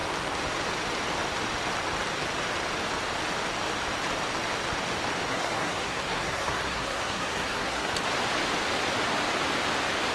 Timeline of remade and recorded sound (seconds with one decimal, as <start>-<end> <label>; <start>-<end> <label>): 0.0-5.3 recorded; 5.3-7.9 remade; 7.9-10.1 recorded